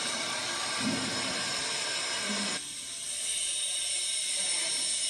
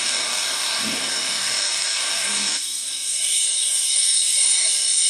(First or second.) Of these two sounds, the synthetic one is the second